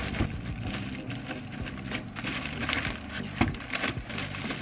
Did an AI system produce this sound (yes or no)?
no